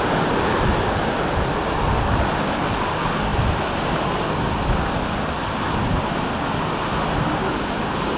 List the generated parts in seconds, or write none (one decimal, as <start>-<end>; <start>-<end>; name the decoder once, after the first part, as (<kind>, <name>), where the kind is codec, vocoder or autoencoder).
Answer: none